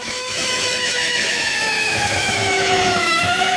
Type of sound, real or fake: fake